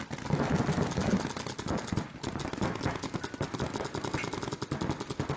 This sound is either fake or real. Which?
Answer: real